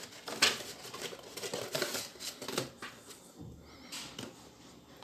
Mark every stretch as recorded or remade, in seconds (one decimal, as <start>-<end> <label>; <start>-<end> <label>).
0.0-5.0 recorded